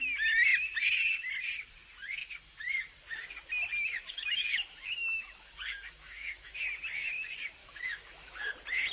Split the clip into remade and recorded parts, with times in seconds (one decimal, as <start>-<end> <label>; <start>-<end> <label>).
0.0-2.2 recorded; 2.2-2.9 remade; 2.9-3.7 recorded; 3.7-6.6 remade; 6.6-7.6 recorded; 7.6-8.5 remade; 8.5-8.9 recorded